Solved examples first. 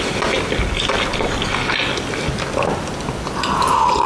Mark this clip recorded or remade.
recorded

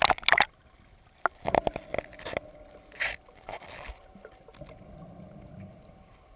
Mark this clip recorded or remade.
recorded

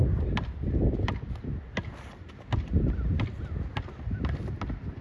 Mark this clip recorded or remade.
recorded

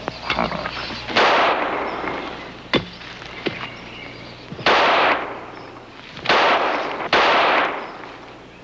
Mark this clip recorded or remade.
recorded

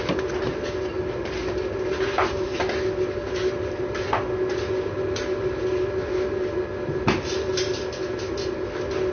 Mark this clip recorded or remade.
recorded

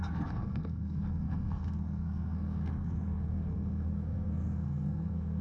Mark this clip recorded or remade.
remade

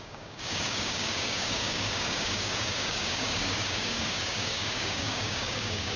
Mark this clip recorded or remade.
remade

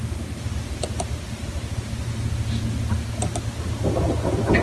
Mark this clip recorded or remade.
recorded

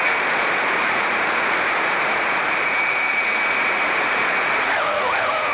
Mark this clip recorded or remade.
remade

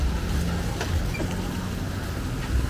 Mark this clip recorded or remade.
recorded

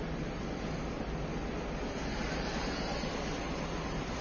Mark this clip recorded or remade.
recorded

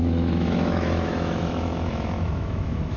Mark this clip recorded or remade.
remade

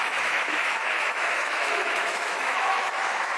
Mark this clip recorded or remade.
remade